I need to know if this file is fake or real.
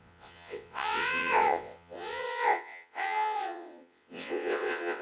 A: fake